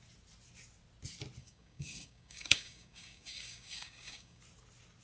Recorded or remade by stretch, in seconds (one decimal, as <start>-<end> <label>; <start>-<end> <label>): 0.0-1.4 recorded; 1.4-4.4 remade; 4.4-5.0 recorded